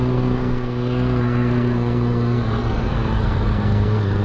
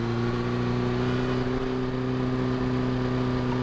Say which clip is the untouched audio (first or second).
second